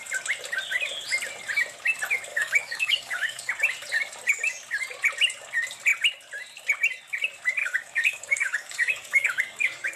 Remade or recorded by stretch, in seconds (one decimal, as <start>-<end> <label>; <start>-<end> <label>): 0.0-2.3 recorded; 2.3-3.5 remade; 3.5-7.6 recorded; 7.6-10.0 remade